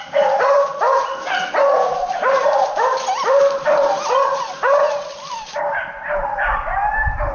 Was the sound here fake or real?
real